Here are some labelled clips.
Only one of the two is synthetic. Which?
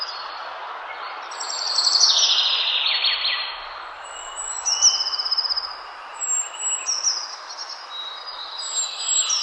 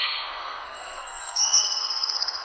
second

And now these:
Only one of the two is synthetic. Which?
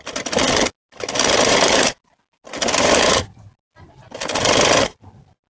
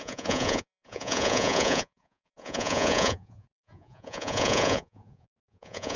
second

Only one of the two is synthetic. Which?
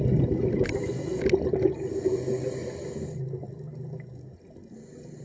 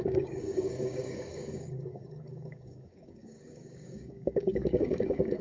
second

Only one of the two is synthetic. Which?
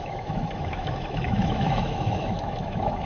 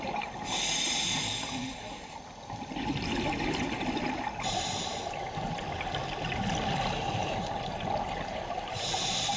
first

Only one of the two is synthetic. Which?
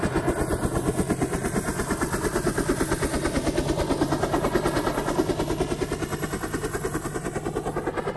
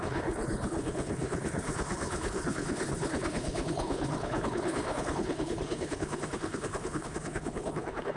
second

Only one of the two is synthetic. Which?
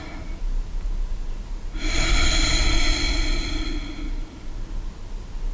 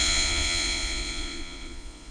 second